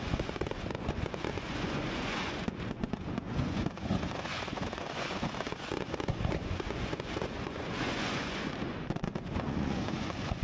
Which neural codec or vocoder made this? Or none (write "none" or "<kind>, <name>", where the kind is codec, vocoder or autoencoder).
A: vocoder, Vocos